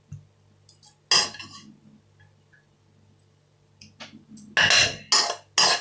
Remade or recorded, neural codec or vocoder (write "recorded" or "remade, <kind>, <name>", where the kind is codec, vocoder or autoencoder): recorded